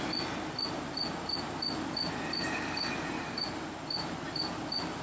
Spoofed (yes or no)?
no